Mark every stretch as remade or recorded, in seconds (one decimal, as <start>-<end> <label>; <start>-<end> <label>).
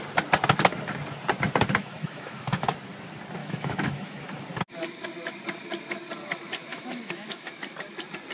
0.0-1.8 recorded; 1.8-2.7 remade; 2.7-3.4 recorded; 3.4-4.4 remade; 4.4-6.7 recorded; 6.7-7.5 remade; 7.5-8.3 recorded